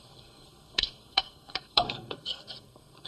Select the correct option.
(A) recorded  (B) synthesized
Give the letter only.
B